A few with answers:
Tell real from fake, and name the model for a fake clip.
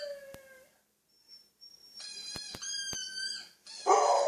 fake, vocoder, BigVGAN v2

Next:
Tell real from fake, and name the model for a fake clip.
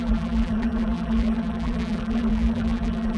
fake, vocoder, BigVGAN v2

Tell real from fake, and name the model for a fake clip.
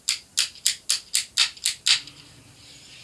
real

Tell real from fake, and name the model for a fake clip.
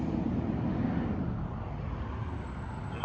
real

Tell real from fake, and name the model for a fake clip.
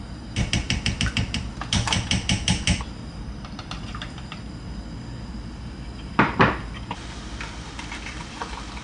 fake, vocoder, BigVGAN v2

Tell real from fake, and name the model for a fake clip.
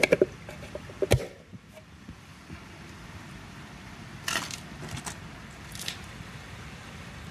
fake, vocoder, BigVGAN v2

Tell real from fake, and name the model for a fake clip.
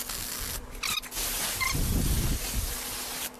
real